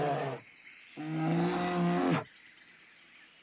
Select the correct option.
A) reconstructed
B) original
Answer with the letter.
B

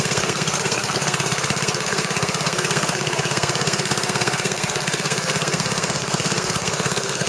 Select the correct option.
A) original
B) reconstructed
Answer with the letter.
B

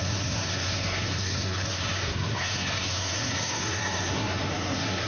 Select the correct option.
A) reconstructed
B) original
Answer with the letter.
A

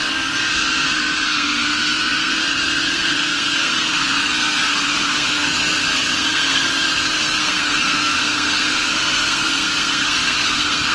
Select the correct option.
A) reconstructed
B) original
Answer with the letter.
A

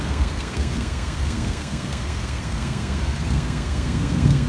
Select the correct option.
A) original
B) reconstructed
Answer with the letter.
B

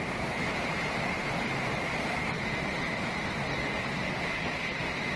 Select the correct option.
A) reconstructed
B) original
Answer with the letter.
B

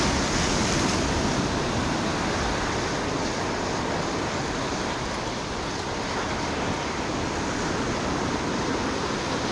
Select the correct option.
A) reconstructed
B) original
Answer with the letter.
B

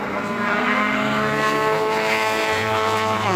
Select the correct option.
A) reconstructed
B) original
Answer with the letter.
A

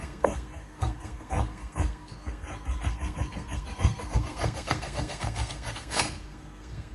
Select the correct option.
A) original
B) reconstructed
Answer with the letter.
B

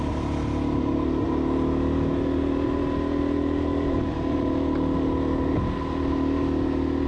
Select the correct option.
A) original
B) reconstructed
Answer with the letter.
A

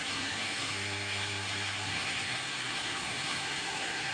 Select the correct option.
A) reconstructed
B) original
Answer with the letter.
A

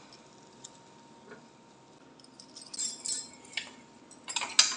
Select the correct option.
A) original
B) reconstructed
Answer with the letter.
A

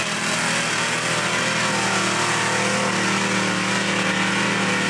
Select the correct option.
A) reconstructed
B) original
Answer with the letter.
B